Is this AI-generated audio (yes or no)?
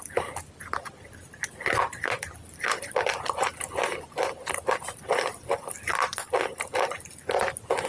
no